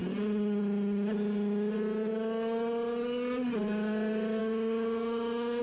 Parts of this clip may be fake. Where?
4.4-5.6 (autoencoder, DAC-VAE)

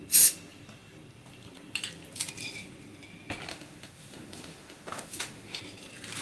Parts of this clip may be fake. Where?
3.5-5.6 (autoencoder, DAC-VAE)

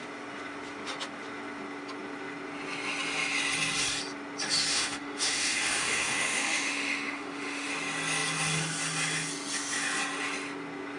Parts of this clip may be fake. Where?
4.7-7.7 (autoencoder, DAC-VAE)

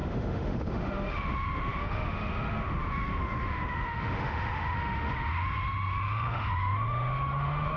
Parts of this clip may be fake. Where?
0.0-7.8 (autoencoder, DAC-VAE)

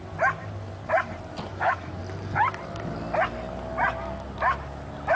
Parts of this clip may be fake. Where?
1.5-2.0 (autoencoder, DAC-VAE)

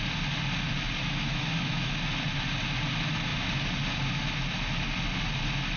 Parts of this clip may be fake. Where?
1.0-1.9 (autoencoder, DAC-VAE)